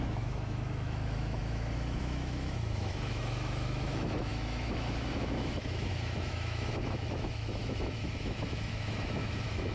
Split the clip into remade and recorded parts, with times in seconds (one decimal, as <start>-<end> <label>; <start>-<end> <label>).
0.0-9.7 remade